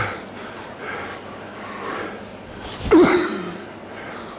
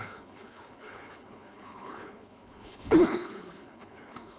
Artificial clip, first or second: second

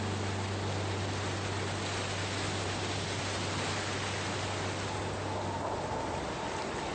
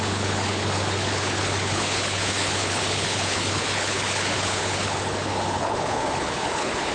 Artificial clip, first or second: second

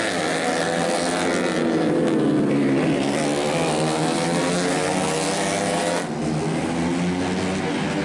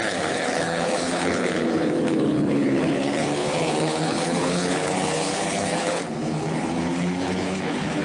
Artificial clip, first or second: second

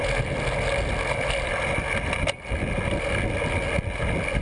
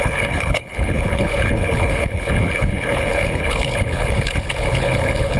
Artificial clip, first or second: second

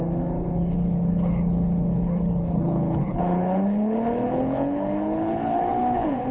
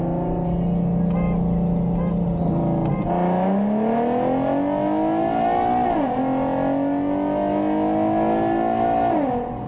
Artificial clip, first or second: first